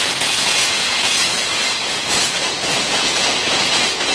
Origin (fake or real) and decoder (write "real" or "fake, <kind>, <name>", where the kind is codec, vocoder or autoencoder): fake, vocoder, Vocos